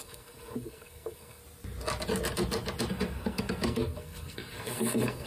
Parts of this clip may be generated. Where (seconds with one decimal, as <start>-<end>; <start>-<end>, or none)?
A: 0.0-1.4; 2.9-5.3